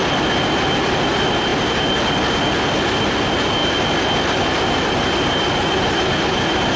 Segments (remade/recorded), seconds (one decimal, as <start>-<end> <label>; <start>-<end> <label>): 0.0-6.8 recorded